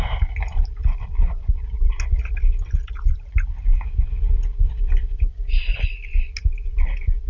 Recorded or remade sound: recorded